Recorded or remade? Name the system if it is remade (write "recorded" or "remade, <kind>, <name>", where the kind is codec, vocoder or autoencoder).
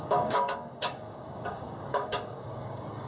remade, codec, DAC